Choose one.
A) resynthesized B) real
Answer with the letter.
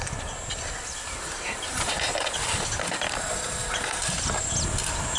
B